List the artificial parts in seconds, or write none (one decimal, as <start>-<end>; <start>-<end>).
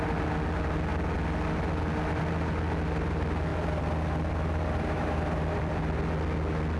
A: 3.5-5.8